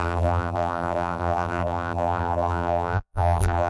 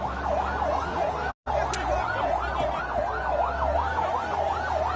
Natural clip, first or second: second